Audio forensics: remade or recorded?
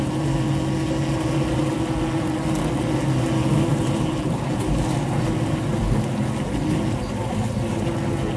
recorded